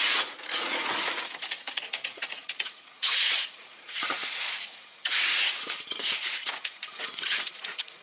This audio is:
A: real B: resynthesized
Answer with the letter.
B